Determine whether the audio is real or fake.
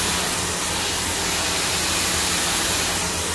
real